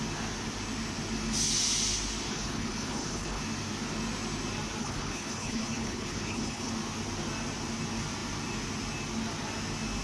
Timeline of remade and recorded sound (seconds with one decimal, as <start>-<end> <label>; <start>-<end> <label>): 0.0-2.3 recorded; 2.3-3.4 remade; 3.4-4.8 recorded; 4.8-6.7 remade; 6.7-10.0 recorded